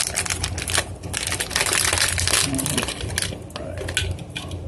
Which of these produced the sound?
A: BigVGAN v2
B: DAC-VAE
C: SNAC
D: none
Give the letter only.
D